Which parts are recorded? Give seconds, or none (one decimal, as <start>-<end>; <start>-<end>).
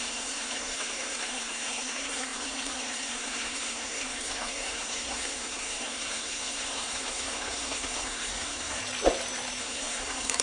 8.8-9.6